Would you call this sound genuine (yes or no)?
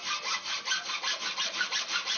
yes